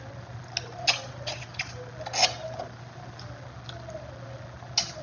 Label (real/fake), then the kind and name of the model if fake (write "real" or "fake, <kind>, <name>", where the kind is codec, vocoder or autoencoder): real